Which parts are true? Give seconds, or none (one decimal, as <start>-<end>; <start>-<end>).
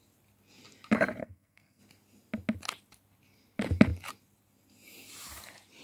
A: 0.0-1.2; 1.8-5.8